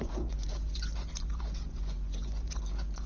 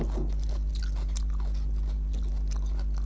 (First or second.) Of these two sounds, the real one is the second